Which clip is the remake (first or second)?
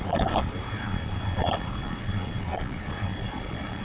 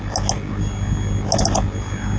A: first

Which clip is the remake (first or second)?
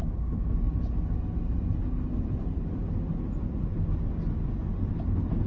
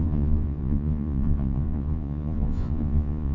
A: second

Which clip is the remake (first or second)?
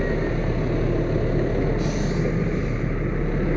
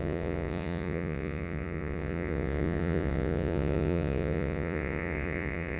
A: second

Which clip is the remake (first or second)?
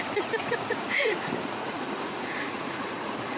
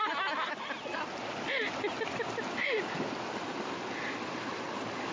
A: first